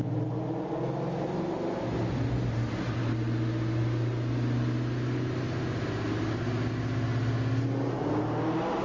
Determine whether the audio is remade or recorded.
recorded